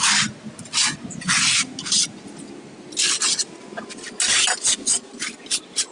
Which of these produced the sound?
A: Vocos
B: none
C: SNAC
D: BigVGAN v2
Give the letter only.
B